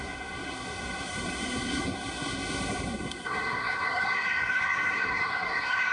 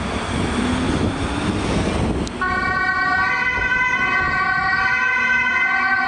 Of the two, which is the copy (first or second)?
first